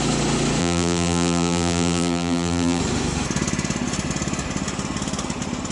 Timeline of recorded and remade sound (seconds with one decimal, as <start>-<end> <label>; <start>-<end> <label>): 0.0-0.6 recorded; 0.6-2.8 remade; 2.8-5.7 recorded